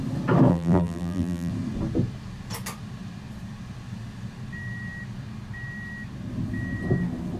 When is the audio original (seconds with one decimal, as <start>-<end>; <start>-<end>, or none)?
0.0-0.5; 1.5-7.4